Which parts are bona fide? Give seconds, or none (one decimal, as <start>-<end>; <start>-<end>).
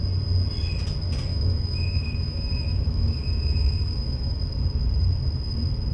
0.0-1.3; 4.4-5.9